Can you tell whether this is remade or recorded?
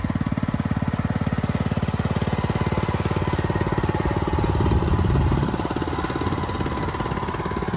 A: recorded